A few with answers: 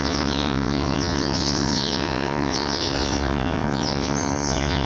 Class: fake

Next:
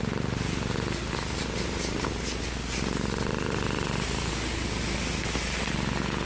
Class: real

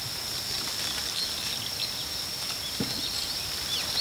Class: real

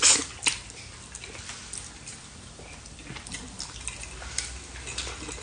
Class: real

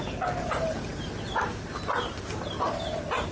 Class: real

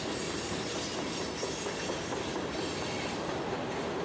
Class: real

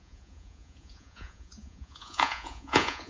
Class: fake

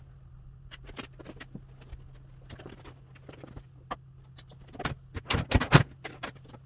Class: real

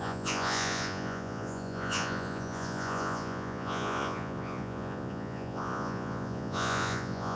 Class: fake